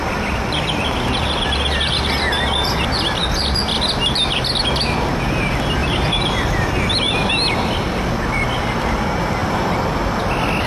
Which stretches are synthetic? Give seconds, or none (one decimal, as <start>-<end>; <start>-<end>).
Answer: 5.8-6.7

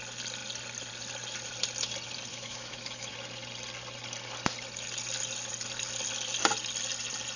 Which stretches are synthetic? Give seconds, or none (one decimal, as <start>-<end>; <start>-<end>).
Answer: 2.3-3.1

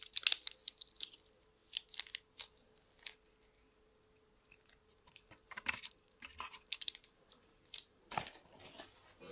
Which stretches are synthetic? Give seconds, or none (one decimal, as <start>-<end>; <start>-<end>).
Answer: 4.8-8.6

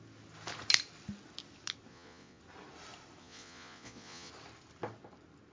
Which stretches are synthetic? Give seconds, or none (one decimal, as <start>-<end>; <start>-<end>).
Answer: 1.9-2.4; 3.2-4.3

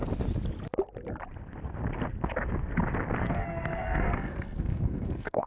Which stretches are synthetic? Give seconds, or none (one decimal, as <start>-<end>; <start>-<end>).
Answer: 3.3-5.5

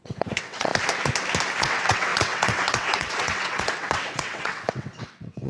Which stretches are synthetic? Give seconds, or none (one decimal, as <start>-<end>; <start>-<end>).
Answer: 0.0-0.7; 1.6-5.5